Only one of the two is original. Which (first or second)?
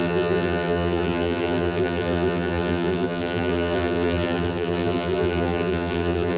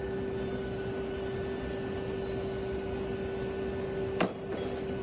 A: second